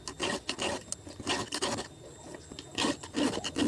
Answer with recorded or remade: recorded